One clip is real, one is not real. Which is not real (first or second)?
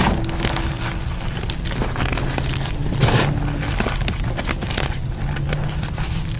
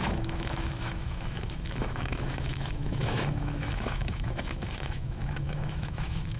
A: second